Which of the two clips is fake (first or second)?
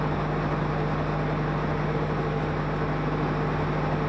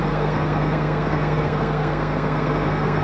second